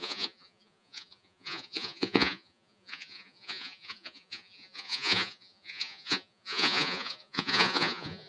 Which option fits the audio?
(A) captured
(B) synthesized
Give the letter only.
B